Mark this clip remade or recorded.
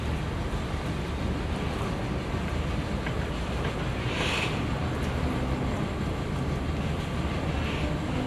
recorded